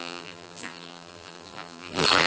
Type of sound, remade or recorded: remade